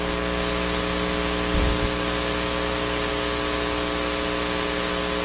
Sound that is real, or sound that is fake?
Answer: real